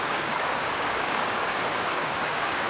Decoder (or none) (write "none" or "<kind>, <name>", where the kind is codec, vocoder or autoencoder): codec, DAC